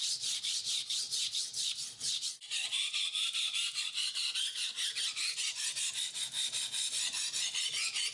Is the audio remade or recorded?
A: recorded